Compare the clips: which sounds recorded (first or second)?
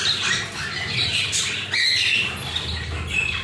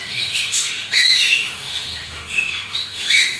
first